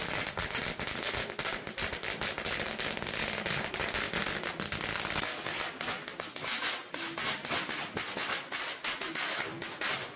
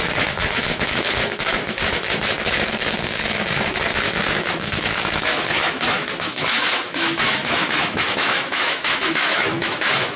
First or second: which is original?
first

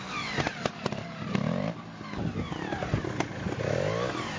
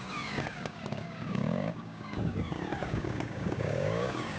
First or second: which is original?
first